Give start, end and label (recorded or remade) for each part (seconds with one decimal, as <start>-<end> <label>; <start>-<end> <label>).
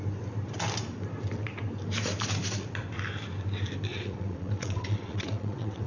0.0-3.9 recorded; 3.9-5.9 remade